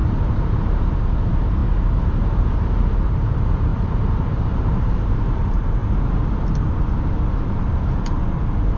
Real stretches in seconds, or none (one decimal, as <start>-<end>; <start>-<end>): 5.8-7.3